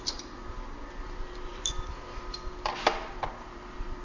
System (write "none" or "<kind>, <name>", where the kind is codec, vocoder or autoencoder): vocoder, BigVGAN v2